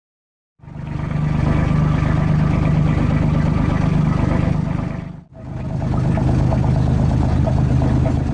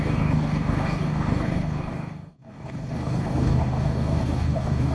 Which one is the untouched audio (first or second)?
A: first